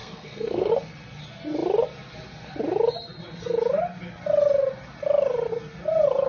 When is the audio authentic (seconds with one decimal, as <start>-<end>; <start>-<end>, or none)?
0.7-6.3

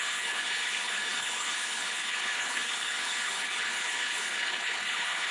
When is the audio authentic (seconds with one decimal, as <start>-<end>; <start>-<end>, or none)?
none

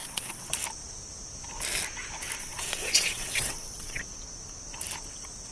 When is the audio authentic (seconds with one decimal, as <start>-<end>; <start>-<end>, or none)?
0.5-2.4; 4.0-5.5

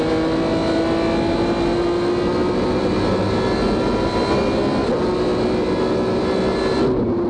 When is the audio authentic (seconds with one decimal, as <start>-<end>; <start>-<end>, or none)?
0.0-7.3

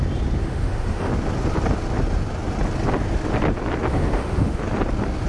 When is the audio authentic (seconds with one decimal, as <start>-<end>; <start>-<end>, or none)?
0.0-0.4; 1.1-3.9; 4.6-5.3

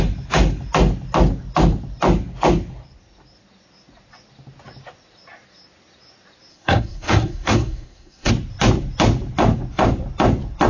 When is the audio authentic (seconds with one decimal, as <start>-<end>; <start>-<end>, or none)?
0.0-6.5; 8.3-10.7

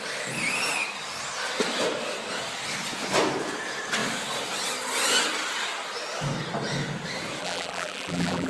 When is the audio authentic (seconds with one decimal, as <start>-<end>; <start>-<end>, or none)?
0.0-7.4